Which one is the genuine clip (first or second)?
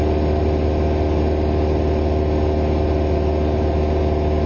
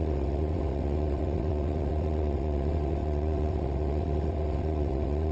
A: first